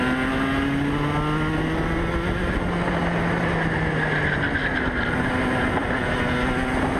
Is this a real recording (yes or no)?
yes